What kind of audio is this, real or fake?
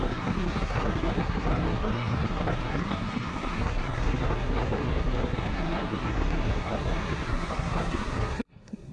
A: fake